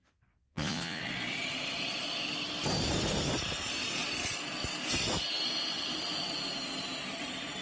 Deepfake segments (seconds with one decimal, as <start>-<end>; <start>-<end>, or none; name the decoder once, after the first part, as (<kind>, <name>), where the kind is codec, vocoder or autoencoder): 0.0-1.0 (vocoder, Vocos)